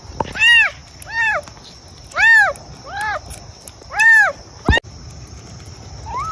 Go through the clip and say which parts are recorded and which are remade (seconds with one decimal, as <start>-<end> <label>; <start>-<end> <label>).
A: 0.0-6.3 recorded